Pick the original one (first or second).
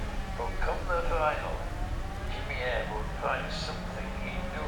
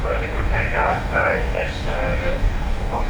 first